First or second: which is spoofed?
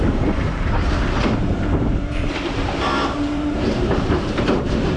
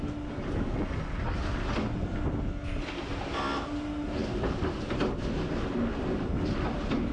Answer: first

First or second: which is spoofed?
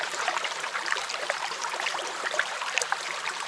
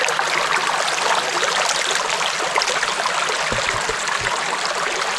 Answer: first